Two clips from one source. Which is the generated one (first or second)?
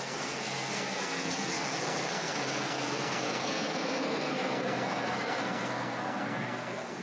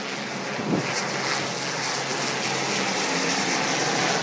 first